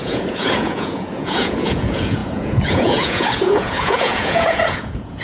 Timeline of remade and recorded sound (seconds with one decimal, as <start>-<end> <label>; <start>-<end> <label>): 0.0-5.2 remade

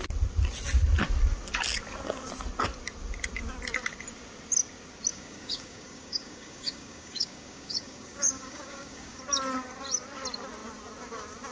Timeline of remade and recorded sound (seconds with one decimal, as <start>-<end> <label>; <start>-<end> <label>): 0.0-5.1 recorded; 5.1-9.2 remade; 9.2-11.5 recorded

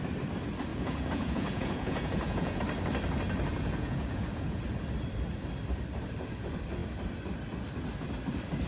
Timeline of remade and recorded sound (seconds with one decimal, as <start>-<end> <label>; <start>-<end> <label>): 0.0-0.7 recorded; 0.7-2.6 remade; 2.6-3.5 recorded; 3.5-4.6 remade; 4.6-8.7 recorded

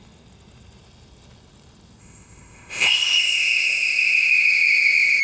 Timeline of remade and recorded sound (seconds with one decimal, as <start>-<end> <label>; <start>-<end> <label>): 0.0-2.0 recorded; 2.0-5.2 remade

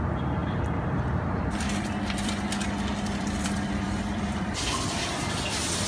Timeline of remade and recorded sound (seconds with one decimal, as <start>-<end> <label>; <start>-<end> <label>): 0.0-0.4 recorded; 0.4-2.5 remade; 2.5-2.9 recorded; 2.9-5.1 remade; 5.1-5.9 recorded

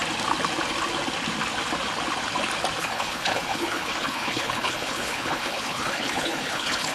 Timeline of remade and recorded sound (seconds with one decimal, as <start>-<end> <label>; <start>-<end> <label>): 0.0-2.8 recorded; 2.8-6.9 remade

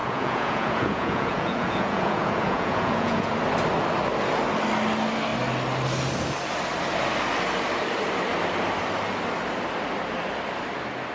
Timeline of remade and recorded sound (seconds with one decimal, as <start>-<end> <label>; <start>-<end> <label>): 0.0-3.3 remade; 3.3-11.1 recorded